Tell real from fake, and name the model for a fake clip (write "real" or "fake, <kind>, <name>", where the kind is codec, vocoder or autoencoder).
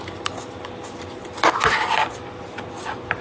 real